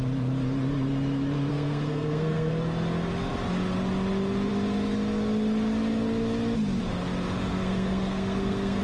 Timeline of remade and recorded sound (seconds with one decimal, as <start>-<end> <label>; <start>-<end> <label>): 0.0-1.5 recorded; 1.5-2.5 remade; 2.5-7.5 recorded; 7.5-8.8 remade